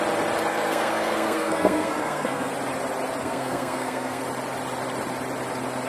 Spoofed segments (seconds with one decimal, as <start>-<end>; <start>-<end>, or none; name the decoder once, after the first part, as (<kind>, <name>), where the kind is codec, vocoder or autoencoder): 0.5-2.5 (codec, SNAC); 3.2-4.2